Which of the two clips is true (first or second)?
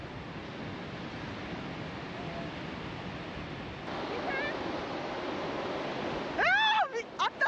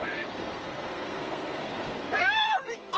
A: first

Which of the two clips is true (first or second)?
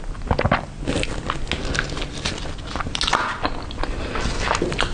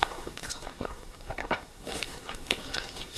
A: first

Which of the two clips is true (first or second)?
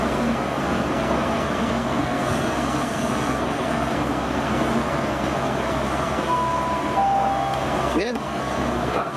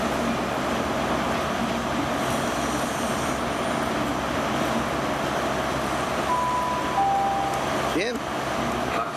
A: second